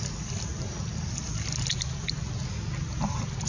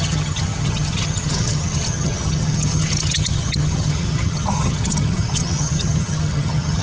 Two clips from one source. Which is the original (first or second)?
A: first